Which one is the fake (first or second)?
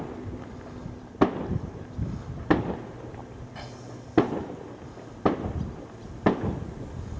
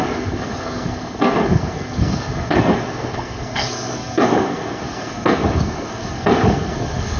second